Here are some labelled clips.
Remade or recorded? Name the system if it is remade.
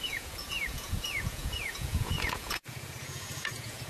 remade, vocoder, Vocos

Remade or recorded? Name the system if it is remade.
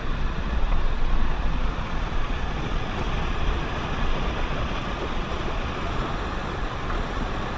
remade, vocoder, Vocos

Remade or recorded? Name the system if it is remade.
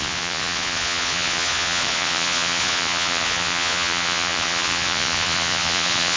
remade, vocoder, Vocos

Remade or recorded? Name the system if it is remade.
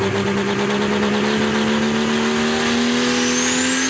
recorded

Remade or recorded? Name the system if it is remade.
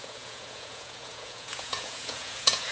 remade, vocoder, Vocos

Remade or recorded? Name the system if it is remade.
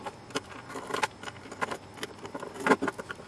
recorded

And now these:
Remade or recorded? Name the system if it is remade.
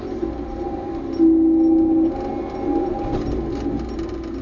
recorded